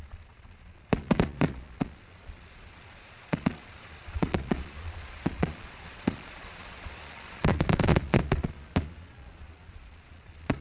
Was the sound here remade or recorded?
remade